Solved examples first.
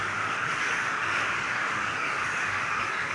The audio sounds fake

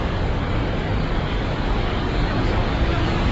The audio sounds fake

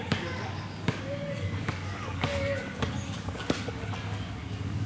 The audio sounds fake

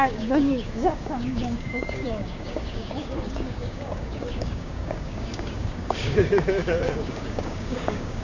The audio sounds fake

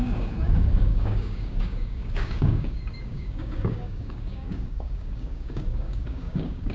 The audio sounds fake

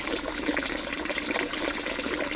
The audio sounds real